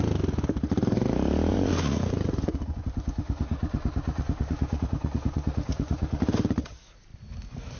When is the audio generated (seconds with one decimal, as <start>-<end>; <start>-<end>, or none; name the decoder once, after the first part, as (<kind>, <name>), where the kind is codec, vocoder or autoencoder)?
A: 1.5-6.2 (vocoder, Vocos)